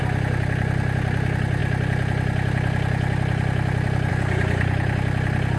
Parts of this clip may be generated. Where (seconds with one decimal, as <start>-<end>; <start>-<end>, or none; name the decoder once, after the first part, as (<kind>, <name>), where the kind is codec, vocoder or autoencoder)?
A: none